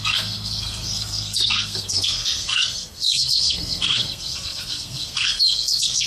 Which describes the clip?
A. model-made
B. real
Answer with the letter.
A